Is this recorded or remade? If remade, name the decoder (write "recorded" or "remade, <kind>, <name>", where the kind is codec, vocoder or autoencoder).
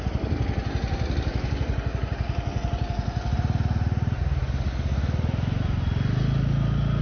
recorded